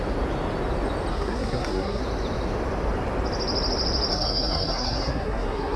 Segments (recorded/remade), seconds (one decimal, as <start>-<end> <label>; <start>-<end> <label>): 0.0-1.1 recorded; 1.1-2.0 remade; 2.0-4.1 recorded; 4.1-5.8 remade